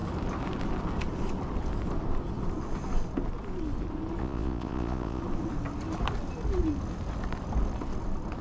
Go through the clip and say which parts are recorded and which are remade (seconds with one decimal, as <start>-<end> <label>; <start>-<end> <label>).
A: 0.0-4.2 recorded; 4.2-5.2 remade; 5.2-8.4 recorded